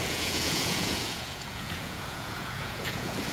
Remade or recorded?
remade